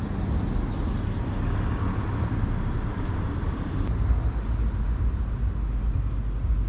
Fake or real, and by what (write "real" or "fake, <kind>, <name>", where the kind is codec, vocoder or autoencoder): real